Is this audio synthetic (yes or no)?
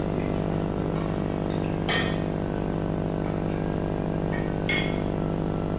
no